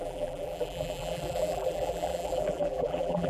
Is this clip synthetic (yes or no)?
yes